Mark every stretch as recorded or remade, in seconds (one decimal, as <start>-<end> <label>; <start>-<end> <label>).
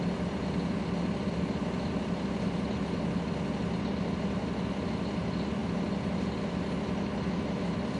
0.0-8.0 recorded